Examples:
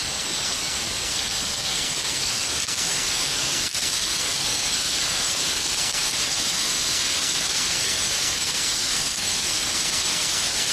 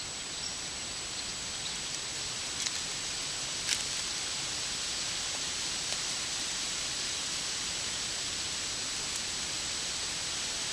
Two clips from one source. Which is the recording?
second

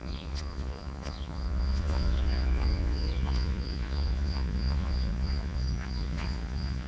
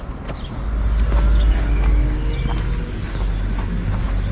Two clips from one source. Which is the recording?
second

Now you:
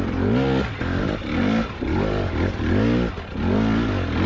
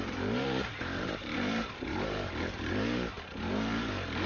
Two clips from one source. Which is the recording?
first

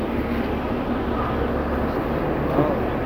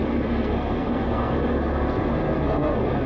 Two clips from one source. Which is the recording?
first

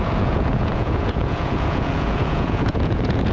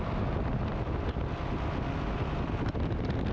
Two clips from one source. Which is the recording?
second